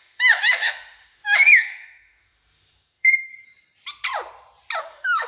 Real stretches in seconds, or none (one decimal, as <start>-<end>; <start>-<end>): 3.3-4.8